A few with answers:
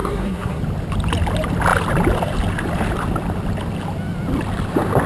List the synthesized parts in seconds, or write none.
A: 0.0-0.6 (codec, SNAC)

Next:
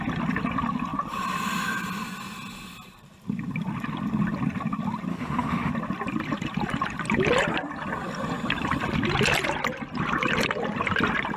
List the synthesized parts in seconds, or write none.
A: 5.1-5.7 (autoencoder, DAC-VAE)

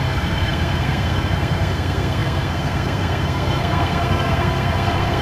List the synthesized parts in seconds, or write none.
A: 0.0-5.2 (codec, SNAC)

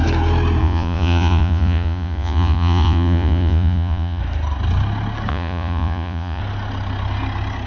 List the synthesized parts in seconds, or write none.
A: 0.6-4.2 (vocoder, Vocos); 5.3-6.4

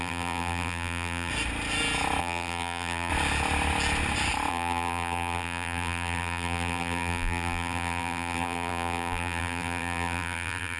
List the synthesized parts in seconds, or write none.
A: 0.0-1.3 (vocoder, BigVGAN v2); 2.2-3.1; 4.5-10.8